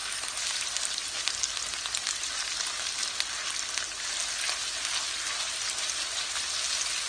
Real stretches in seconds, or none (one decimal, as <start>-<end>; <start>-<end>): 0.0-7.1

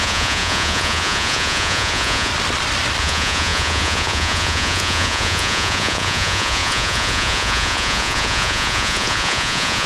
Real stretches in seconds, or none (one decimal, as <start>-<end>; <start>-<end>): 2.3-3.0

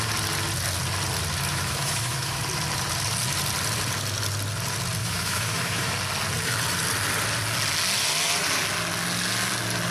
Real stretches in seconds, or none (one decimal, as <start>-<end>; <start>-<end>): 0.0-1.5; 2.4-5.0; 5.9-9.9